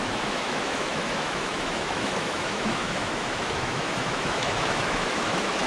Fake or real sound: fake